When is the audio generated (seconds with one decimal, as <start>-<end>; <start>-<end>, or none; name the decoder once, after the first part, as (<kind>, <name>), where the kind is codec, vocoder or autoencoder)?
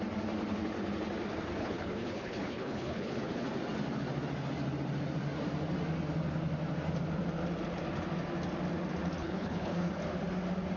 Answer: 1.6-3.2 (codec, HILCodec); 9.2-9.9